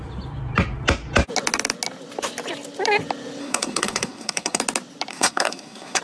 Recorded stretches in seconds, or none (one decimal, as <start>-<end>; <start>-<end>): 0.0-3.4; 4.6-5.1